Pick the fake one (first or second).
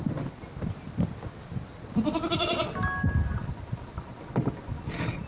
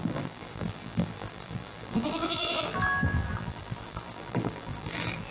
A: second